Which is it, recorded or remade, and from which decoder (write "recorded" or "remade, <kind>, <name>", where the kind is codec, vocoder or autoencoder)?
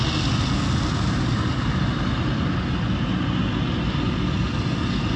recorded